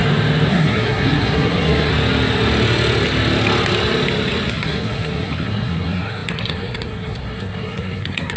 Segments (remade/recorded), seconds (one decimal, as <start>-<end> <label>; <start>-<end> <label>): 0.0-0.5 recorded; 0.5-1.9 remade; 1.9-4.5 recorded; 4.5-8.4 remade